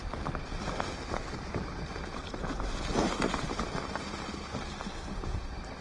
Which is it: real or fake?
real